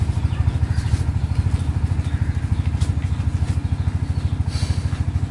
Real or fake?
real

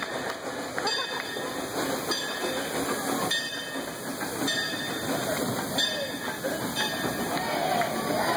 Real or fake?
real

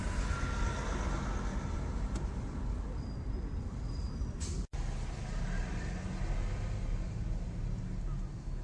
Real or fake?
real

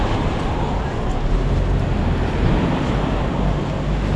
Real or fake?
real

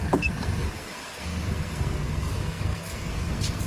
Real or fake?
fake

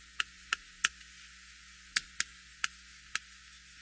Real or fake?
real